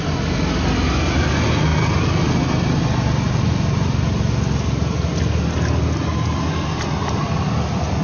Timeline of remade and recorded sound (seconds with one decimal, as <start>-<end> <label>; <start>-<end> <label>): 0.0-8.0 recorded